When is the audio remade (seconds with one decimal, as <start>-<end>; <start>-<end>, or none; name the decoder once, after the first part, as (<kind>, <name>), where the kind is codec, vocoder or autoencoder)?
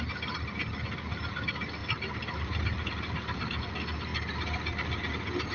1.8-3.6 (vocoder, BigVGAN v2)